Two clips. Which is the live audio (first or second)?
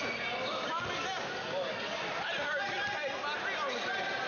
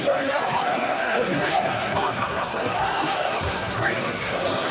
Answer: first